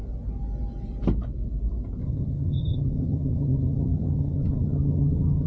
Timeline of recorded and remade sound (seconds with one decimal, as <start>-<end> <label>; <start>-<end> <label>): 0.0-2.0 recorded; 2.0-5.5 remade